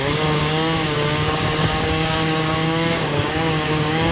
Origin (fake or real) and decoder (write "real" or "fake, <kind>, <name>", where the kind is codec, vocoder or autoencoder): fake, codec, DAC